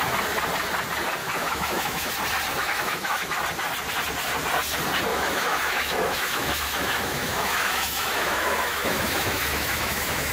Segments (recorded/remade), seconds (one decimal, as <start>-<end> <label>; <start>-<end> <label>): 0.0-1.2 recorded; 1.2-2.1 remade; 2.1-2.6 recorded; 2.6-3.4 remade; 3.4-5.1 recorded; 5.1-10.3 remade